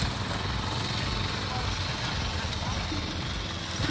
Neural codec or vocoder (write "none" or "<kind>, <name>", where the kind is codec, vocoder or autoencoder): none